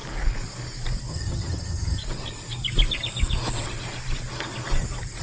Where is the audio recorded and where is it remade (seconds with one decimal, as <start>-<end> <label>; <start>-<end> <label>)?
0.0-1.1 recorded; 1.1-2.0 remade; 2.0-5.2 recorded